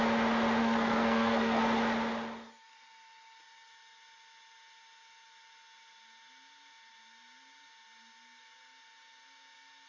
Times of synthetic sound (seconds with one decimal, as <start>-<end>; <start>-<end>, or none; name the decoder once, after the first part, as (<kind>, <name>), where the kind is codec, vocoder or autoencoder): 0.6-1.6 (codec, SNAC)